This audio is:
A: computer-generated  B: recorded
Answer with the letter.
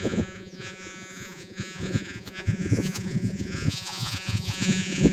A